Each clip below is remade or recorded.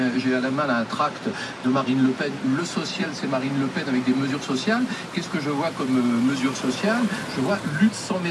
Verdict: recorded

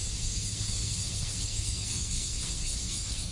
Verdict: remade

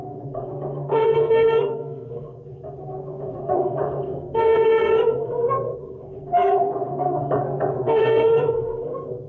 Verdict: remade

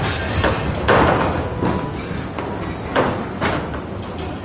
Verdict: recorded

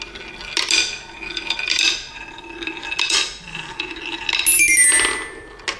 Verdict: recorded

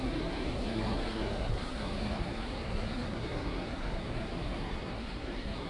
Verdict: remade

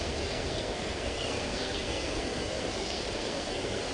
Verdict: remade